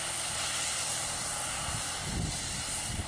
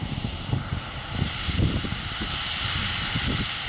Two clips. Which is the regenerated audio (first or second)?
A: second